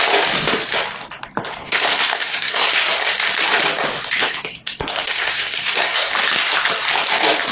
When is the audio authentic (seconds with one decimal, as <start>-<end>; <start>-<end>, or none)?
0.0-1.6; 2.7-4.2; 6.1-7.5